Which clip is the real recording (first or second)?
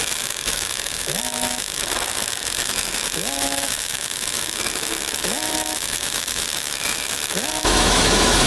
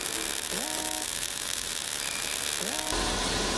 second